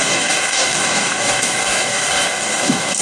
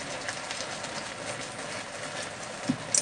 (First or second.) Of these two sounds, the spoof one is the first